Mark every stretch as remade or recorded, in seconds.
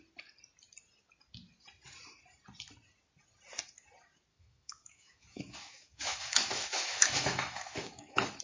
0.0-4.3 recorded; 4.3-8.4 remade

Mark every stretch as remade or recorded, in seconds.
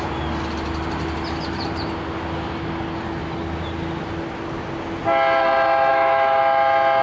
0.0-5.9 recorded; 5.9-6.4 remade; 6.4-7.0 recorded